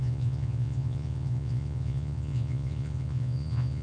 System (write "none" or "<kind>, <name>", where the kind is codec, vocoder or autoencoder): vocoder, Vocos